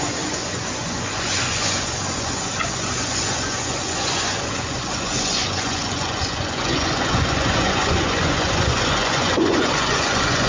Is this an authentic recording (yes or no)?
no